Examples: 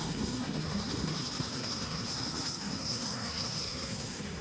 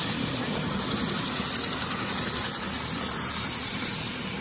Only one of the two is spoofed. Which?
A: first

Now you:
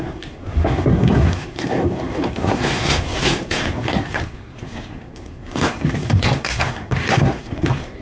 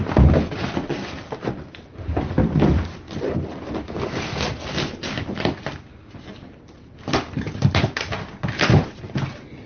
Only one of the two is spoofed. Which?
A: first